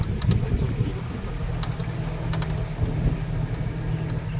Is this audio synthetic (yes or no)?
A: no